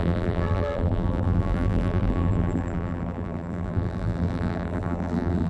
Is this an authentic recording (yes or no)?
no